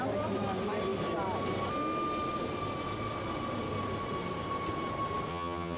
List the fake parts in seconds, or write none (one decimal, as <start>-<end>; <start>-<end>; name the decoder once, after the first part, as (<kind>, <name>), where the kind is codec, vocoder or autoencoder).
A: 5.3-5.8 (vocoder, HiFi-GAN)